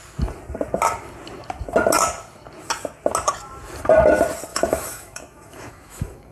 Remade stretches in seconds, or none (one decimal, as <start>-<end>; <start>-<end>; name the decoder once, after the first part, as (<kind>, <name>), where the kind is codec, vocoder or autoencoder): 4.5-6.3 (autoencoder, DAC-VAE)